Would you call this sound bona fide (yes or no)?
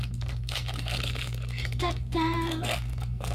no